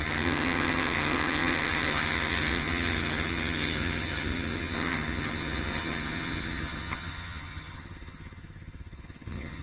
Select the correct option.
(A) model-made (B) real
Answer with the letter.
A